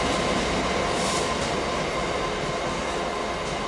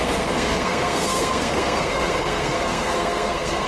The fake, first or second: second